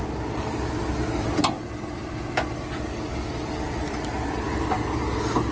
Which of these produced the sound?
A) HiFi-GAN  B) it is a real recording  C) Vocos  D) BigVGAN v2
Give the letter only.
B